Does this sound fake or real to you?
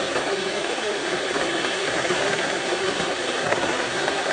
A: fake